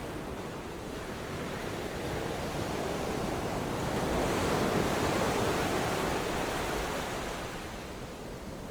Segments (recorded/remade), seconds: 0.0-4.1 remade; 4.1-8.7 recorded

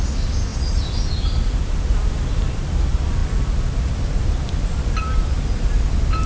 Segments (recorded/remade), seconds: 0.0-6.3 recorded

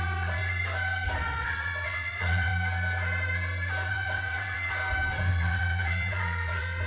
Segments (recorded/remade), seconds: 0.0-0.4 remade; 0.4-1.2 recorded; 1.2-2.5 remade; 2.5-3.9 recorded; 3.9-4.8 remade; 4.8-5.3 recorded; 5.3-6.9 remade

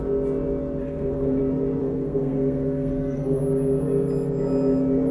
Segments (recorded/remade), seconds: 0.0-0.8 recorded; 0.8-1.4 remade; 1.4-1.8 recorded; 1.8-3.4 remade; 3.4-5.1 recorded

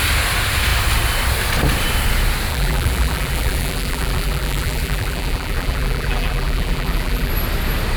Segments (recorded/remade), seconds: 0.0-2.5 recorded; 2.5-7.3 remade; 7.3-8.0 recorded